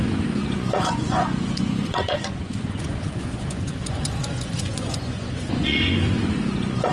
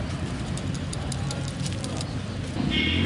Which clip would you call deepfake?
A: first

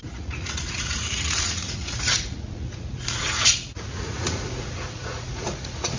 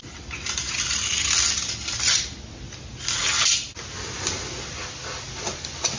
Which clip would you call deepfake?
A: first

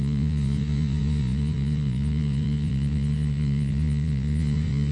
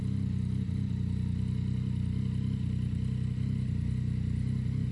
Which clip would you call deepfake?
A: first